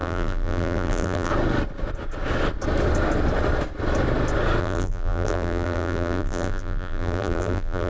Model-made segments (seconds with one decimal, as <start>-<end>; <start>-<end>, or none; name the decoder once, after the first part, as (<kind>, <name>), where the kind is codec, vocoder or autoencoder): 0.0-1.3 (vocoder, BigVGAN v2); 4.6-7.9